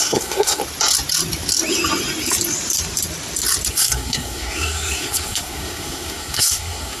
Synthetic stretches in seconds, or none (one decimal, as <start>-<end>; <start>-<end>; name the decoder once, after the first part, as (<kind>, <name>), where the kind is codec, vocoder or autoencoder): 0.0-0.6 (codec, SNAC); 3.7-7.0